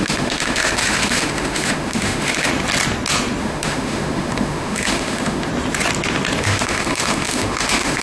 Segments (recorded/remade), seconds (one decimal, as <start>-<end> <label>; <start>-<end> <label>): 0.0-2.5 remade; 2.5-3.4 recorded; 3.4-5.5 remade; 5.5-6.4 recorded; 6.4-8.0 remade